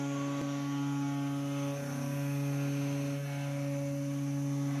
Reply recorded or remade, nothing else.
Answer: recorded